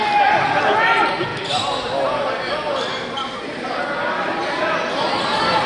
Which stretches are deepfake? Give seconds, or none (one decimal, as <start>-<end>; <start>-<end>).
none